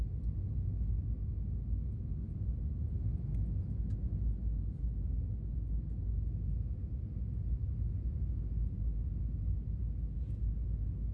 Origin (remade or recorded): recorded